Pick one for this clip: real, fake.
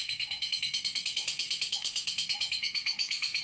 fake